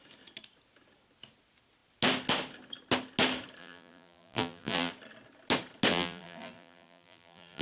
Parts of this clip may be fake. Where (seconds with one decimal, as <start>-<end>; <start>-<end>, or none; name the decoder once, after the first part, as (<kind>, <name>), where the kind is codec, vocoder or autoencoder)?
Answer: 3.6-4.9 (vocoder, BigVGAN v2); 5.9-7.6